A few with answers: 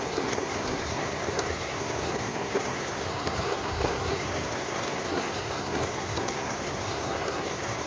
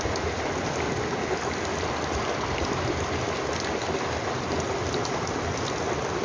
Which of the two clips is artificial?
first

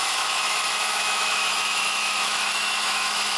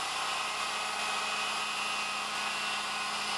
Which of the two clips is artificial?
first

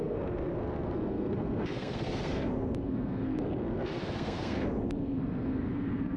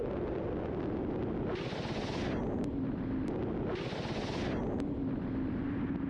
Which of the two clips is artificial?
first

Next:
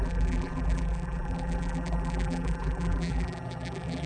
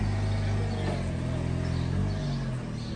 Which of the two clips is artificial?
first